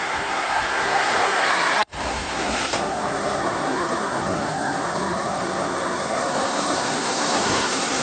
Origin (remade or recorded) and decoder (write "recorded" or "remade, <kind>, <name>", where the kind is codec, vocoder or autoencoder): remade, codec, SNAC